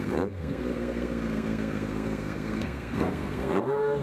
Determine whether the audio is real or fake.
fake